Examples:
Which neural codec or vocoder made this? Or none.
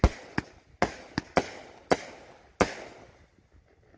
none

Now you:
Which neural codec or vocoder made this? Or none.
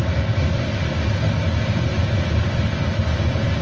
none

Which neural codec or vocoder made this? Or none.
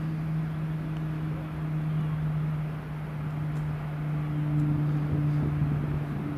none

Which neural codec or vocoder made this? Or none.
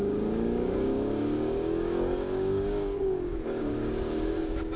codec, DAC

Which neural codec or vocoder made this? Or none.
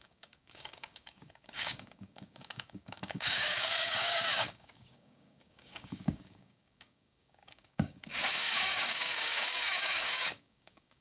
codec, DAC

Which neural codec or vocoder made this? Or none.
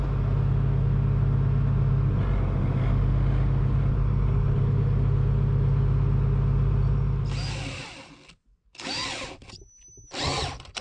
none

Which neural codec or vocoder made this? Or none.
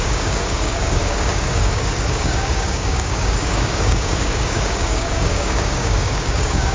codec, DAC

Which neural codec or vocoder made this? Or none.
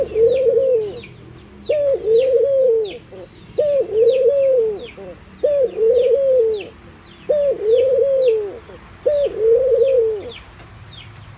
none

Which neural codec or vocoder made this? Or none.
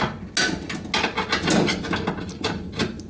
none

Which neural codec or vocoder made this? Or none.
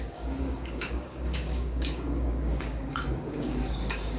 codec, DAC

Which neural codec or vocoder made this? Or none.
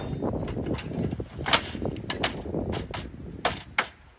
none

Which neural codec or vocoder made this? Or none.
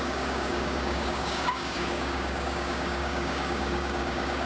codec, DAC